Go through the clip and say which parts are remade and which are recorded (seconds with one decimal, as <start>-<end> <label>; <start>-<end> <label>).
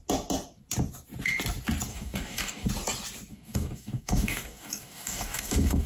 0.0-1.9 recorded; 1.9-2.7 remade; 2.7-3.3 recorded; 3.3-5.9 remade